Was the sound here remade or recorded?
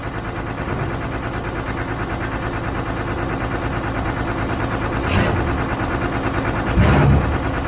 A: recorded